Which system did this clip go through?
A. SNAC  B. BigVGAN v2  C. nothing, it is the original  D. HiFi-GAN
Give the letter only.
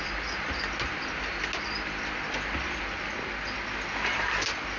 C